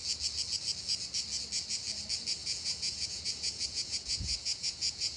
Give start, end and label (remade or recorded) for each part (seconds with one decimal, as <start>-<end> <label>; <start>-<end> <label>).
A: 0.0-2.4 recorded; 2.4-5.2 remade